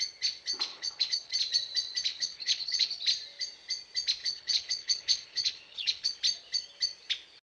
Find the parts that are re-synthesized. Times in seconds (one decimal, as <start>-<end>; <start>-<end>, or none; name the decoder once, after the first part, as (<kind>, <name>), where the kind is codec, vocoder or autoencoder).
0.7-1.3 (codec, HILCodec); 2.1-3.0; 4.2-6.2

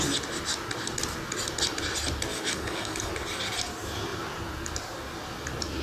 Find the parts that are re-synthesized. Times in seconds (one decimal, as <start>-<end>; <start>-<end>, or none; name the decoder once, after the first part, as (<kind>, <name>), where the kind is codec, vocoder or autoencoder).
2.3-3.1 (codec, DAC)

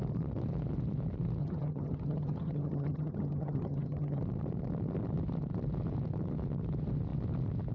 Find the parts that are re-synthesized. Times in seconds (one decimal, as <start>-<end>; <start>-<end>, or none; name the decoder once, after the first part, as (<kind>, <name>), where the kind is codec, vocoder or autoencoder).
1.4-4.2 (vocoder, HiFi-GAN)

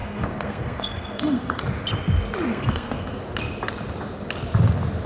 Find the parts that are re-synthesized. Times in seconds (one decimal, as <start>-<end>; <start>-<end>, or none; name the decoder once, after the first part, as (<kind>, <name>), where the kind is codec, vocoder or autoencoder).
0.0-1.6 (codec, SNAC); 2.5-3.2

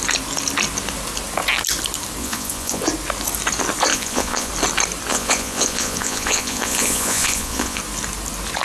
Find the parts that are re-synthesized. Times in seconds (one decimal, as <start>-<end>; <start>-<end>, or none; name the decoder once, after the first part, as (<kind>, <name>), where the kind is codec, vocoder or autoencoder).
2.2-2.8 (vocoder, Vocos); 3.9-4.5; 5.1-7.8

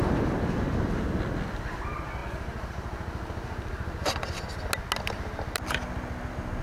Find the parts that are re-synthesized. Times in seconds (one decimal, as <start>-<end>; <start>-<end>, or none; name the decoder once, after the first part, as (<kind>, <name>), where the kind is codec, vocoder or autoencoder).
none

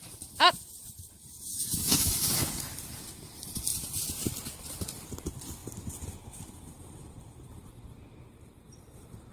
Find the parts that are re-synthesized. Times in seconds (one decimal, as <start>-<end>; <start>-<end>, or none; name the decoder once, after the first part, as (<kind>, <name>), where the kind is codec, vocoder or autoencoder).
1.5-2.7 (codec, DAC)